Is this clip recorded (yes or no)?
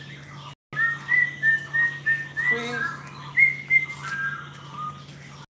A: yes